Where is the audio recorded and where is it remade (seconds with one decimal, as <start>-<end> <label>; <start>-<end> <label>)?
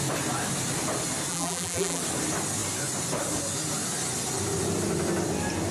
0.0-1.3 recorded; 1.3-2.0 remade; 2.0-5.7 recorded